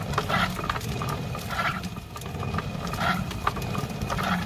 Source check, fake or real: real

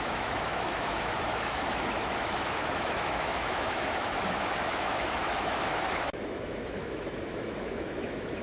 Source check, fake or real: fake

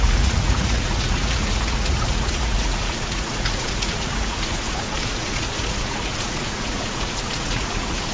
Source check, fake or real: fake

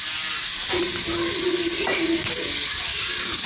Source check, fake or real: real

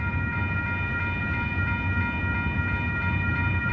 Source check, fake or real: real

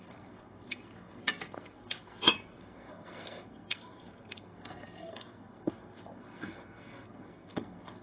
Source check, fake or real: fake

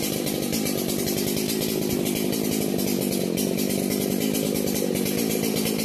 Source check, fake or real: real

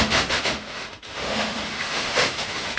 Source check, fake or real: fake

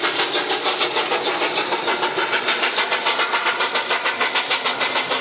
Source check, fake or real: real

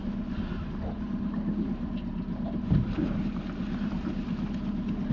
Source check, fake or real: real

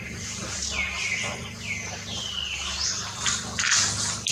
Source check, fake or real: real